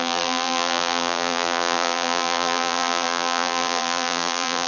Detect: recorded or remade remade